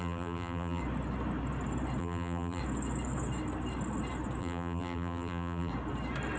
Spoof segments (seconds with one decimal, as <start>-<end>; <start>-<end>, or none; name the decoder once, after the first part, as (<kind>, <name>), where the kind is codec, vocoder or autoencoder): 0.0-0.8 (vocoder, BigVGAN v2); 2.0-2.6; 4.4-5.7